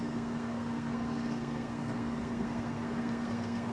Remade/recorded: remade